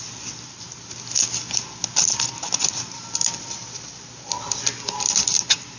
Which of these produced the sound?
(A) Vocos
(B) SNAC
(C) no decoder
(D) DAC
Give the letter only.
C